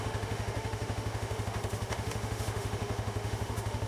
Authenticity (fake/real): fake